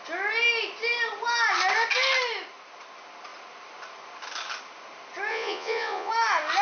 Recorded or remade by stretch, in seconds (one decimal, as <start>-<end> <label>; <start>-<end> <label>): 0.0-5.3 recorded; 5.3-6.1 remade; 6.1-6.6 recorded